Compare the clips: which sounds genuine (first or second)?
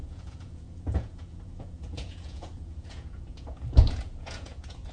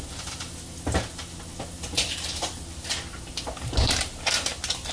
second